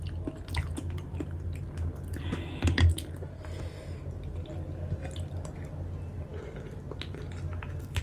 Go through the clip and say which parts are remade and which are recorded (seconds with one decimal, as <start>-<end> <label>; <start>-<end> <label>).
0.0-8.0 recorded